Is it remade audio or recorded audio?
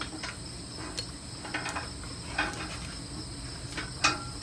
recorded